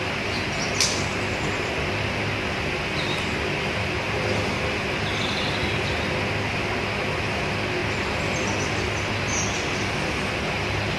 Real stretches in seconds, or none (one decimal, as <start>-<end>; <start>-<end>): 0.0-11.0